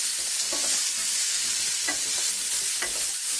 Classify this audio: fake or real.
real